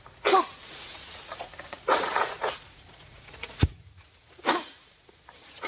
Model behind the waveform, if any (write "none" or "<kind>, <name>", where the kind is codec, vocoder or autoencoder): vocoder, Vocos